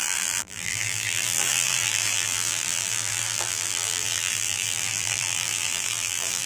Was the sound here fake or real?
fake